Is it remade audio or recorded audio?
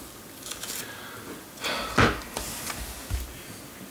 recorded